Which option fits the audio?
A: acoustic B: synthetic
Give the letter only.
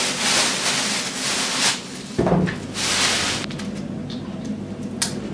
A